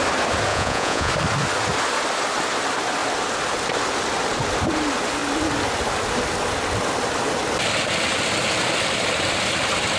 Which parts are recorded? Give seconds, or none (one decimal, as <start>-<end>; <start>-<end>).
0.0-0.5; 1.1-10.0